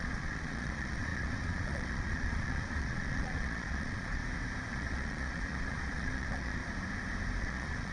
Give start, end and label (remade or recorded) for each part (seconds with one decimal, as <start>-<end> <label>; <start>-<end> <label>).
0.0-4.2 remade; 4.2-4.7 recorded; 4.7-6.6 remade; 6.6-7.4 recorded; 7.4-7.9 remade